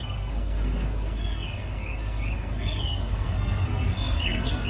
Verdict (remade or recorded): remade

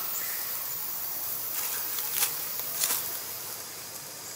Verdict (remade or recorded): recorded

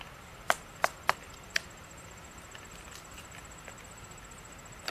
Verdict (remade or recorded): recorded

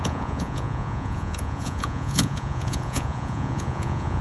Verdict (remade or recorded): remade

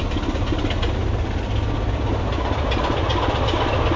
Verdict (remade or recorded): recorded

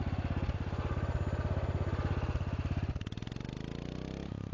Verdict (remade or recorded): recorded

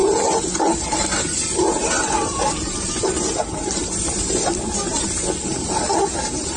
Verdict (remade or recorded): recorded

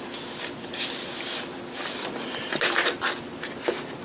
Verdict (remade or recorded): recorded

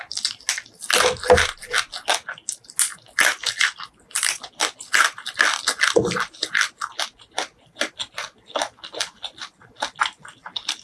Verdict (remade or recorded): recorded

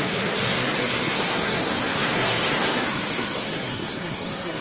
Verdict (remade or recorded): remade